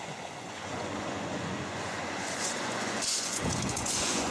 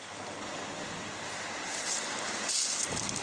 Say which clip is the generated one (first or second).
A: first